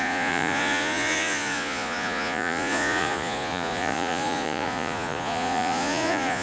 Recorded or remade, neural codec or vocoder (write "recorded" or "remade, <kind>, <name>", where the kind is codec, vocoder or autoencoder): remade, vocoder, Vocos